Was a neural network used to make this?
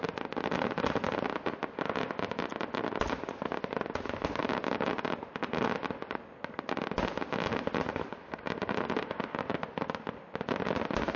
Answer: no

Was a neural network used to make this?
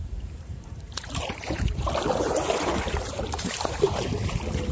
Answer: yes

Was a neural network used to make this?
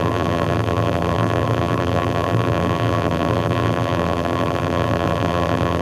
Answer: yes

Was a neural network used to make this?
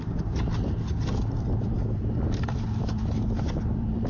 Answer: yes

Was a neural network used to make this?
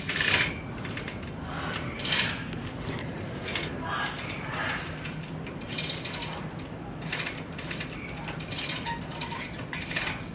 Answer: no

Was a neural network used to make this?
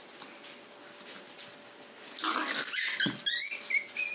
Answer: no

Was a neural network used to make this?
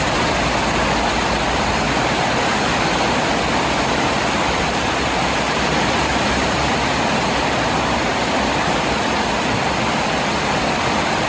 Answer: no